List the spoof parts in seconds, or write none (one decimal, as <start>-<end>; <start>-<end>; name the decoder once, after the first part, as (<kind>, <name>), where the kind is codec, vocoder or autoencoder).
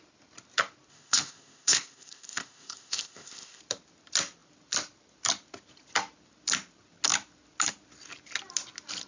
0.9-3.6 (codec, ZipCodec)